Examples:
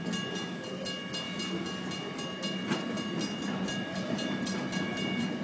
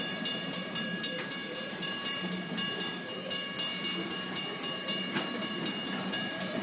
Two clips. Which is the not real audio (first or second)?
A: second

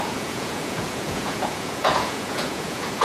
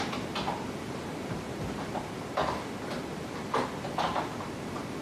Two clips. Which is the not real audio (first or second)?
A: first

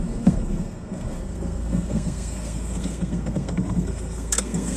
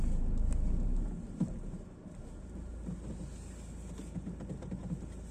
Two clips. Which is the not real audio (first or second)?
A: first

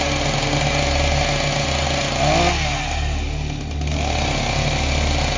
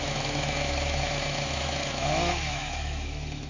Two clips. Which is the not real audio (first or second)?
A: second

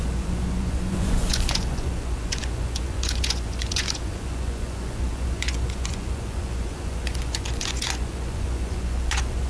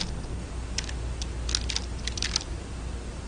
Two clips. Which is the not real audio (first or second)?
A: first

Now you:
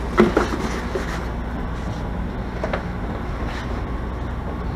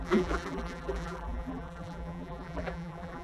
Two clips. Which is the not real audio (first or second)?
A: second